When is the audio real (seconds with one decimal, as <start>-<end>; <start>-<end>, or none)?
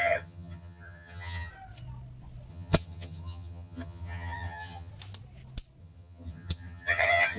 1.5-2.5; 4.9-5.8